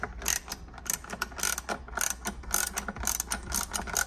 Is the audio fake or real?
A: real